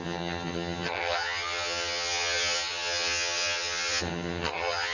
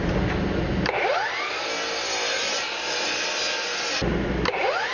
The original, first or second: second